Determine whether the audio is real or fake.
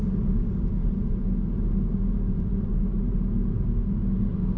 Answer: real